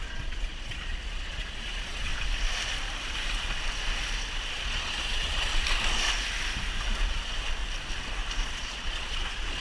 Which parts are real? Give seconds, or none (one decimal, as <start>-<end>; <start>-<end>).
2.1-4.5; 5.5-7.0; 7.6-8.5